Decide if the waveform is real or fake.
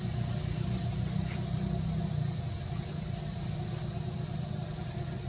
real